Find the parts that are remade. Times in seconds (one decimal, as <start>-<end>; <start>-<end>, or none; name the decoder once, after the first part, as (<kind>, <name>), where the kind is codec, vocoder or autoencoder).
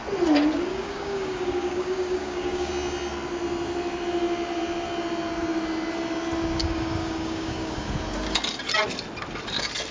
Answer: 0.7-2.7 (codec, DAC); 6.6-7.9